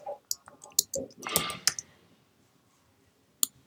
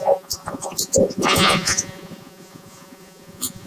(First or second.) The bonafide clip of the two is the first